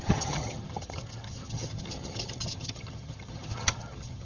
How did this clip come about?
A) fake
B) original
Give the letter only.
A